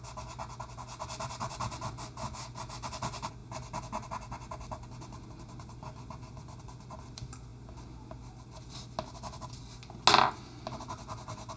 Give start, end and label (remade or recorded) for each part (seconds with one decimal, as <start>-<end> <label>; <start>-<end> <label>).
0.0-11.6 recorded

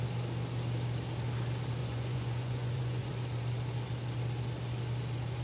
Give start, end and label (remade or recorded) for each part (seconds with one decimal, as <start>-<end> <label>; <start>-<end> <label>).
0.0-1.8 recorded; 1.8-3.1 remade; 3.1-5.4 recorded

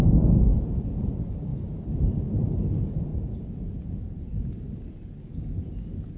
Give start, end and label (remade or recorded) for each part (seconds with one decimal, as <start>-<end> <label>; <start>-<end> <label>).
0.0-0.8 remade; 0.8-3.1 recorded; 3.1-4.5 remade; 4.5-6.2 recorded

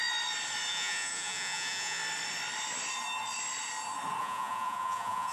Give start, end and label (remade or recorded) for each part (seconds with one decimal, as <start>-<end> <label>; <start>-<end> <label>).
0.0-0.7 recorded; 0.7-2.0 remade; 2.0-4.2 recorded; 4.2-5.3 remade

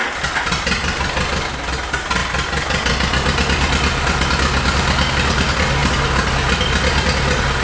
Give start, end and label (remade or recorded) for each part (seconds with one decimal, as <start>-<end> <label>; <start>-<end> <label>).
0.0-7.6 recorded

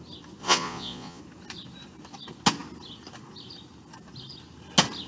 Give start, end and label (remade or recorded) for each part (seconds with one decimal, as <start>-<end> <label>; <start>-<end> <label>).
0.0-0.4 recorded; 0.4-1.2 remade; 1.2-5.1 recorded

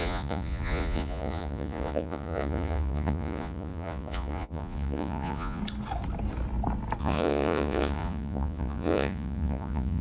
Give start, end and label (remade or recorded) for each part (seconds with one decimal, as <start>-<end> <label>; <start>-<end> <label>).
0.0-5.6 remade; 5.6-7.0 recorded; 7.0-10.0 remade

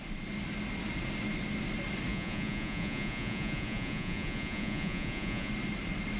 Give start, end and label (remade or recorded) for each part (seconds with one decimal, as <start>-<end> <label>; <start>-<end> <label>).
0.0-2.1 recorded; 2.1-5.5 remade; 5.5-6.2 recorded